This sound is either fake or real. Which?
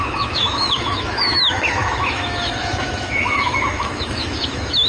fake